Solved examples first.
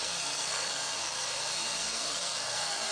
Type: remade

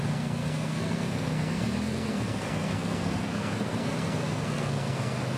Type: remade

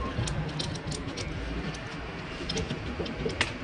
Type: recorded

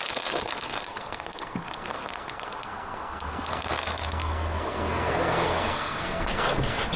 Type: remade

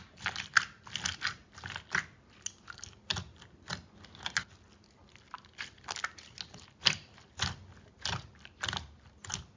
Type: recorded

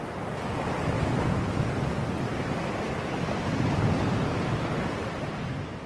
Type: recorded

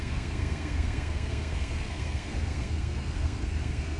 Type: remade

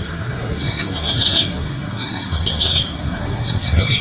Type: remade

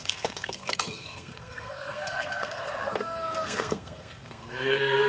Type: remade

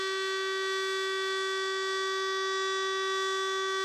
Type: recorded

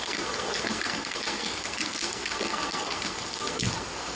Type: remade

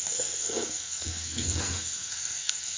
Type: remade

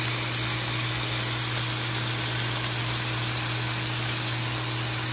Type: recorded